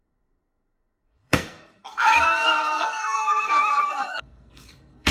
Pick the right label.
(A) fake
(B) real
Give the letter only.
A